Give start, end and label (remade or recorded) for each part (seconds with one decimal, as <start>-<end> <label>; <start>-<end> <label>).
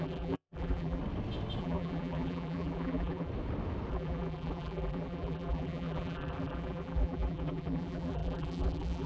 0.0-1.0 remade; 1.0-1.6 recorded; 1.6-3.3 remade; 3.3-3.9 recorded; 3.9-9.1 remade